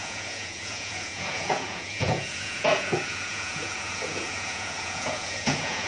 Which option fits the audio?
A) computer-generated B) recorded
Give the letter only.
A